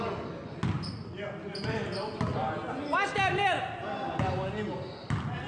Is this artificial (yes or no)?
no